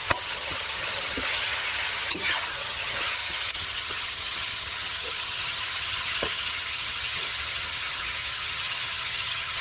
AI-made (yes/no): yes